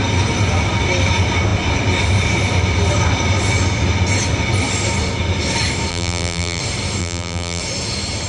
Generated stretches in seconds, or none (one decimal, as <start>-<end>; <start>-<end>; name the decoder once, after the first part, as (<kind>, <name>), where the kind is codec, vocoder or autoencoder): 5.9-6.6 (vocoder, BigVGAN v2); 7.0-7.6